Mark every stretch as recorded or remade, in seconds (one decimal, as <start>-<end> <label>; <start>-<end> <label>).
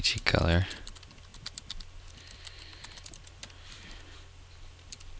0.0-5.2 recorded